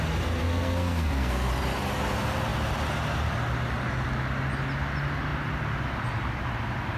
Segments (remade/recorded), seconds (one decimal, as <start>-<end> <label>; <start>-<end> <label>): 0.0-0.4 recorded; 0.4-1.5 remade; 1.5-7.0 recorded